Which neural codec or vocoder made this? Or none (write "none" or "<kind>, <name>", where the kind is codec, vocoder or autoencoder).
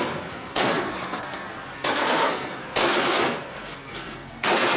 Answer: codec, SNAC